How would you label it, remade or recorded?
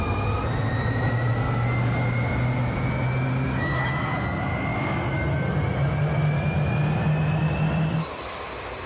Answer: recorded